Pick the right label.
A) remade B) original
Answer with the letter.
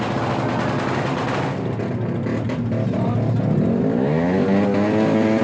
B